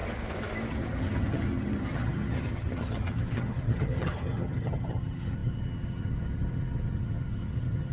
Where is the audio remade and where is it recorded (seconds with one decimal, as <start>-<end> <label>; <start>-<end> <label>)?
0.0-0.7 recorded; 0.7-7.9 remade